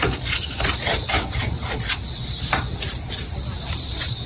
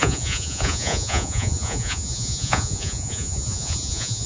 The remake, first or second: second